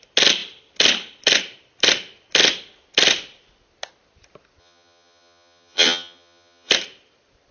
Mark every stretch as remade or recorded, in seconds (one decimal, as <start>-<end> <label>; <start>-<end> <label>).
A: 0.0-4.6 recorded; 4.6-6.7 remade; 6.7-7.5 recorded